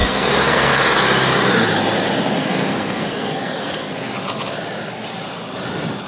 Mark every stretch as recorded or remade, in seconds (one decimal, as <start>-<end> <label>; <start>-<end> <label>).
0.0-0.8 remade; 0.8-2.4 recorded; 2.4-3.9 remade; 3.9-6.1 recorded